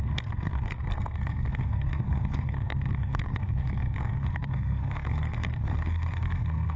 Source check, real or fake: fake